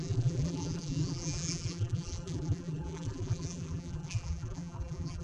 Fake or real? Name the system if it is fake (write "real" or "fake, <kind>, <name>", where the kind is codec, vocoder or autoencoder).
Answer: fake, vocoder, BigVGAN v2